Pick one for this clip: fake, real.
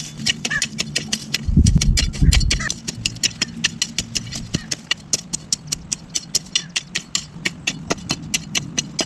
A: real